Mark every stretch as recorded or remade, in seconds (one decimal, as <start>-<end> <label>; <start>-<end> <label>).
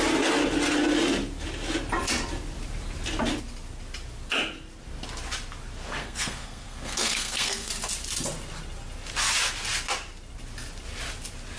0.0-6.0 recorded; 6.0-7.7 remade; 7.7-11.6 recorded